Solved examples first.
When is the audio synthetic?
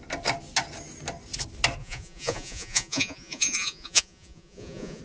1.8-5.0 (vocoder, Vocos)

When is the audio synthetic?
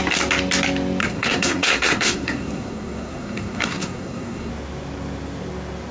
1.0-4.5 (codec, SNAC)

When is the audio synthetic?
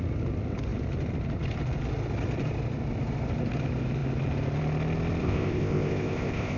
5.2-6.6 (codec, ZipCodec)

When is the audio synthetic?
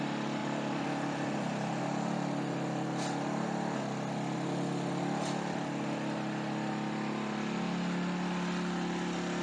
0.4-1.8 (vocoder, BigVGAN v2)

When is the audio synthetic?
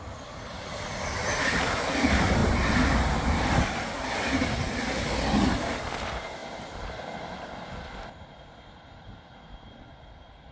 none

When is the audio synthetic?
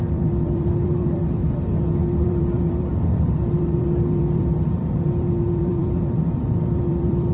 0.0-1.4 (vocoder, BigVGAN v2); 2.0-7.3